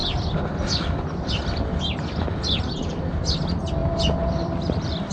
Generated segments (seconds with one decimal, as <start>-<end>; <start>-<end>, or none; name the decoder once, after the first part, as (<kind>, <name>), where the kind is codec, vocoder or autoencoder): 3.8-5.1 (vocoder, BigVGAN v2)